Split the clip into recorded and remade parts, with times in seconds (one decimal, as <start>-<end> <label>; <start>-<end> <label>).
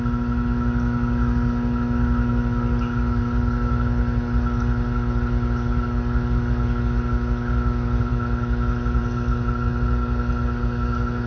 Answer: 0.0-11.3 recorded